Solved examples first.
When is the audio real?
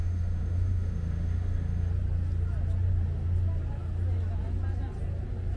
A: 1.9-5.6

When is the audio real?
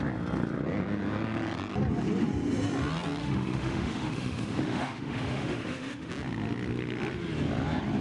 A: 0.0-3.2; 6.1-8.0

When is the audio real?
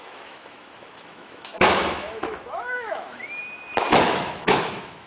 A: 3.4-4.0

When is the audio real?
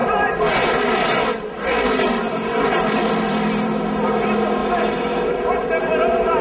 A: 0.0-4.6; 5.4-6.4